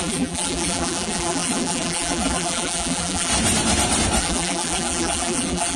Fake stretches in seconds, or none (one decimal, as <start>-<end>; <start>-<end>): 0.0-3.3; 4.2-5.8